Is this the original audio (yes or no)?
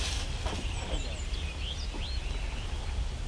yes